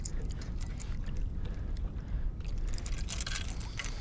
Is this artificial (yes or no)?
no